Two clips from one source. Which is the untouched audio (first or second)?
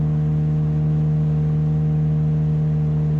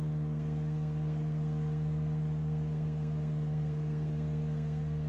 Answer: first